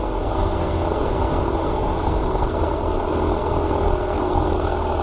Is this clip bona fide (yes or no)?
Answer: no